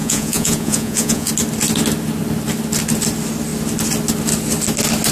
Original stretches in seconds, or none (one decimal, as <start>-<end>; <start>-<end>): 1.3-5.1